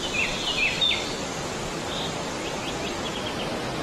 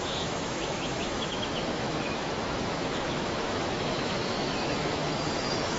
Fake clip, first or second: second